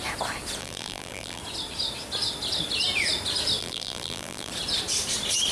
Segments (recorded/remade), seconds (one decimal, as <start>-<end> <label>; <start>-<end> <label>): 0.0-0.6 recorded; 0.6-1.4 remade; 1.4-3.6 recorded; 3.6-4.5 remade; 4.5-5.5 recorded